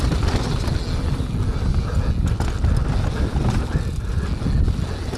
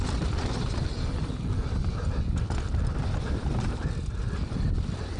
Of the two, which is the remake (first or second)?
second